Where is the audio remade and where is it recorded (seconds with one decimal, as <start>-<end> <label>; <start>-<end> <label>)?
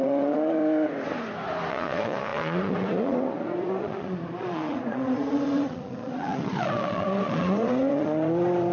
0.0-0.6 remade; 0.6-1.7 recorded; 1.7-8.7 remade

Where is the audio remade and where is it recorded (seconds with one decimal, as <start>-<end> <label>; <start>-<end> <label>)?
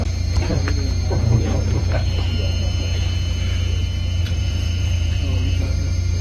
0.0-4.2 recorded; 4.2-5.5 remade; 5.5-6.2 recorded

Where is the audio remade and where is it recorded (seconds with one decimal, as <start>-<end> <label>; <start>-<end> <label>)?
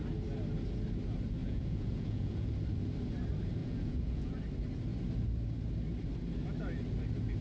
0.0-1.4 recorded; 1.4-2.5 remade; 2.5-3.6 recorded; 3.6-4.4 remade; 4.4-7.4 recorded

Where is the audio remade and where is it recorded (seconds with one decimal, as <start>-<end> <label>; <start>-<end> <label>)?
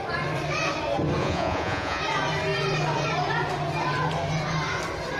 0.0-1.2 recorded; 1.2-2.0 remade; 2.0-5.2 recorded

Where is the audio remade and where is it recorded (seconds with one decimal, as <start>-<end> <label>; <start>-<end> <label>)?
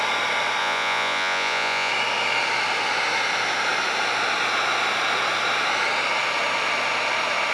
0.0-0.6 recorded; 0.6-1.9 remade; 1.9-7.5 recorded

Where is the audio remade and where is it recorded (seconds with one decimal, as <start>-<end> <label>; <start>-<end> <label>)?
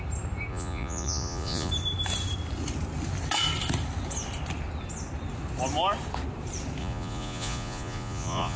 0.0-0.5 recorded; 0.5-1.7 remade; 1.7-6.8 recorded; 6.8-8.6 remade